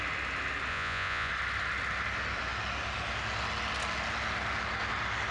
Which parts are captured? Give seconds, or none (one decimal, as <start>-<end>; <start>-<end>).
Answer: 0.0-0.7; 1.3-5.3